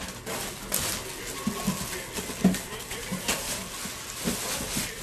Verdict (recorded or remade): recorded